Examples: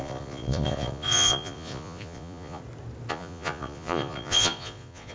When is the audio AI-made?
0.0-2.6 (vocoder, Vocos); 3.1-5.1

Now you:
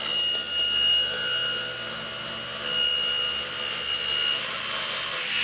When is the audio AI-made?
none

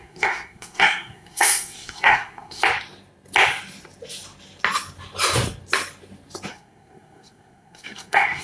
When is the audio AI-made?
0.0-2.6 (codec, SNAC); 6.5-8.4

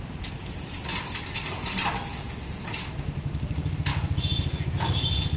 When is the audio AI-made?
3.9-5.4 (vocoder, Vocos)